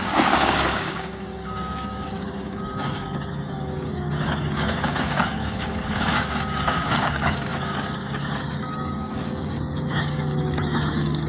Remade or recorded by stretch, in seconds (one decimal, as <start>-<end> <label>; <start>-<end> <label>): 0.0-11.3 remade